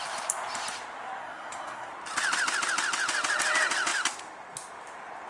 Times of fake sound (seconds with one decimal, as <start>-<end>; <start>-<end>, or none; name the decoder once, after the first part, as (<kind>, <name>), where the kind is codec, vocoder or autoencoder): 1.2-1.9 (codec, SNAC)